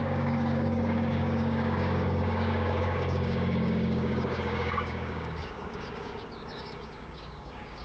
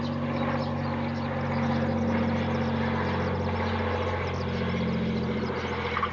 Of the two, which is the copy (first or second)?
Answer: first